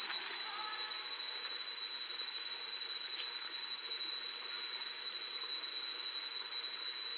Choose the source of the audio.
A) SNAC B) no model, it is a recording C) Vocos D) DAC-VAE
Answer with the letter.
B